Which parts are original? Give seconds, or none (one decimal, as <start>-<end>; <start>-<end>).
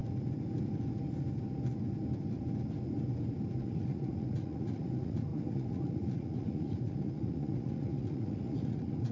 0.0-3.6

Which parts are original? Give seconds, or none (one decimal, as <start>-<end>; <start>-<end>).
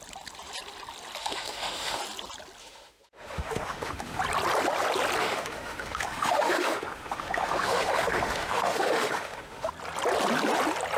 0.0-1.2; 2.0-2.6; 4.2-5.2; 9.7-11.0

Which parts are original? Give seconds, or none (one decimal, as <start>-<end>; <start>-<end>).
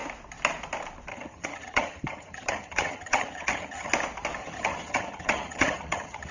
0.0-1.1; 3.9-4.4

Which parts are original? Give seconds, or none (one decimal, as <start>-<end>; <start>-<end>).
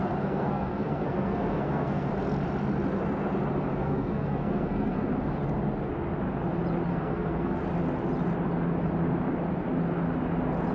2.1-3.8; 5.1-6.9; 7.6-10.7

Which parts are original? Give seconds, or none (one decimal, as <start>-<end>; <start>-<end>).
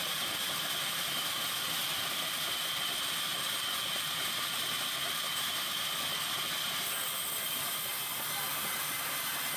3.3-4.0; 6.1-7.5; 7.9-8.8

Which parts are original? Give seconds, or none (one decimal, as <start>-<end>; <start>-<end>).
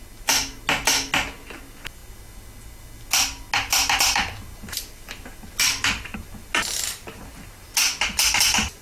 0.0-8.8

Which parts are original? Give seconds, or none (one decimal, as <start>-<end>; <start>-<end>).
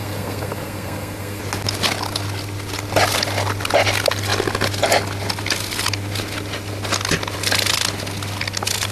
1.4-8.9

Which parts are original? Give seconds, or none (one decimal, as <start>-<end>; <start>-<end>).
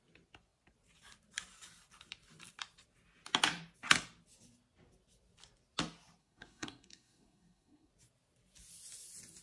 0.0-6.2; 7.9-9.4